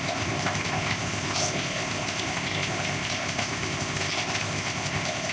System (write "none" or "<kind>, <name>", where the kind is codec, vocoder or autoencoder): codec, ZipCodec